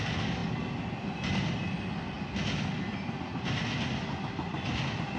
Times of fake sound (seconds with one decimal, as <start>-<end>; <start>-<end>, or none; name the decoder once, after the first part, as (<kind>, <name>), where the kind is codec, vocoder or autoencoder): none